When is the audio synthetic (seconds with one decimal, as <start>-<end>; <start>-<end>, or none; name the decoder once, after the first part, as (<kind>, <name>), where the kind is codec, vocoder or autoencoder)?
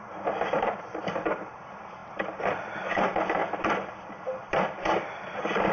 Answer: 0.0-5.7 (vocoder, BigVGAN v2)